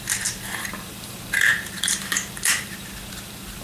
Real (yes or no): no